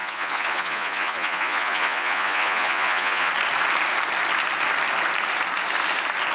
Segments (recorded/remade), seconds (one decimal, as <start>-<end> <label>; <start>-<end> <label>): 0.0-3.3 remade; 3.3-6.3 recorded